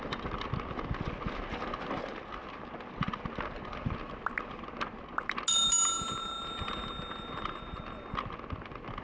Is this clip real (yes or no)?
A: yes